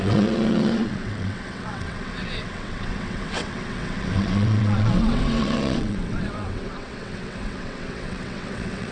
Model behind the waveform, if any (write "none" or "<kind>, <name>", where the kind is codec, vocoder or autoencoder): vocoder, WaveNeXt